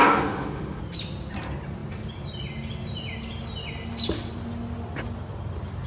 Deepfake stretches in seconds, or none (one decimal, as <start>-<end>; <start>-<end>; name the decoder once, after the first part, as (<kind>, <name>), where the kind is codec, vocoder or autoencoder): 0.0-0.8 (autoencoder, DAC-VAE)